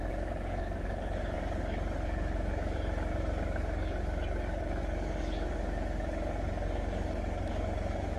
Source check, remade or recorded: remade